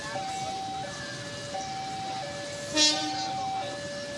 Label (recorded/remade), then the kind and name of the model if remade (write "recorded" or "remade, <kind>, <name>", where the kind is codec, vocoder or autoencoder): recorded